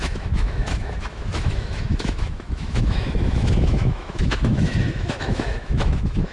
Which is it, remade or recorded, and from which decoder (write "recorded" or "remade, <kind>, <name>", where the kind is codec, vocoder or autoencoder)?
remade, autoencoder, DAC-VAE